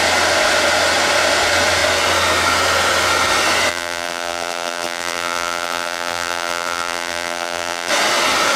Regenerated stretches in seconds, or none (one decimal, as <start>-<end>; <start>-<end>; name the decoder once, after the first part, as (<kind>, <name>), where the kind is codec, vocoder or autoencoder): 3.7-7.9 (vocoder, BigVGAN v2)